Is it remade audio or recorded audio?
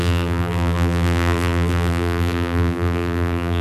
remade